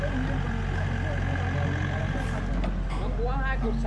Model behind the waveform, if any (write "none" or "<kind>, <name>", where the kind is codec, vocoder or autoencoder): none